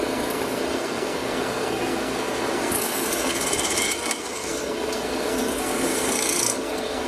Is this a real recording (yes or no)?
no